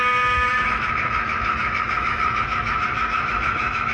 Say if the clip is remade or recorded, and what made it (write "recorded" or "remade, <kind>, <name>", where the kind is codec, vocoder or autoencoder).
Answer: remade, autoencoder, DAC-VAE